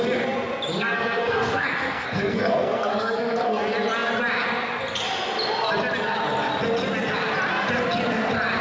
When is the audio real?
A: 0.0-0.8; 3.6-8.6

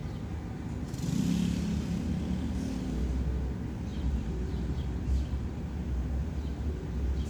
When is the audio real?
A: 0.0-3.9; 5.6-7.3